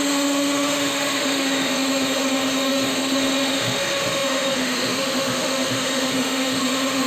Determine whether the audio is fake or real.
fake